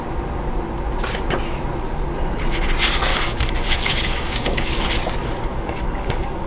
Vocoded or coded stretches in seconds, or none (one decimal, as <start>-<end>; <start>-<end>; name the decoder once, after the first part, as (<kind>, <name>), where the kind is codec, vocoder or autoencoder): 3.1-4.9 (codec, DAC); 5.5-6.5